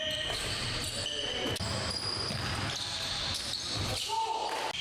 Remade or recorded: recorded